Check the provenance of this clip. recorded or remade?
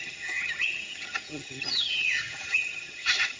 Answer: remade